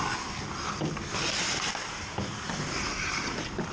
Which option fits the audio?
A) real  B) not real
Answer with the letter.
A